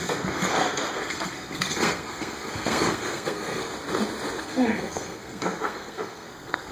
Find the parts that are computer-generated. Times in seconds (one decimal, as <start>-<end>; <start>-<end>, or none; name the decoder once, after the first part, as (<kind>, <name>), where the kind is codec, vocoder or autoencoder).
0.0-3.7 (codec, SNAC); 4.4-6.7